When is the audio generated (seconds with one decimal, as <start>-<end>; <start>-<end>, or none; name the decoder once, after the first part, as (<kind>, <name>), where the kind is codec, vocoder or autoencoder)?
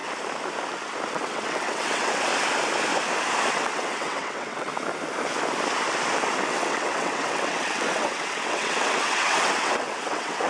1.1-2.3 (vocoder, WaveNeXt); 3.5-4.7; 6.5-10.5